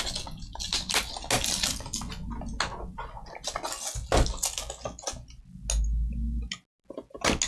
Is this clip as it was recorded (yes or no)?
yes